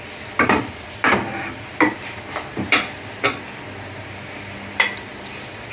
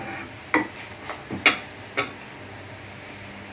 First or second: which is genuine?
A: second